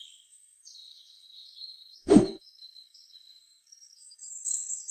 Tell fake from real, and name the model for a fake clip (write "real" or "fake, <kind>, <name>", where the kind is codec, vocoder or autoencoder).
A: fake, codec, SNAC